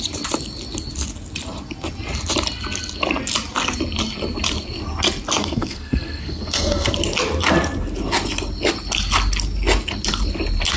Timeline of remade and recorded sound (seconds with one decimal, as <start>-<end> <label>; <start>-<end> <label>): 0.0-5.4 recorded; 5.4-6.9 remade; 6.9-10.8 recorded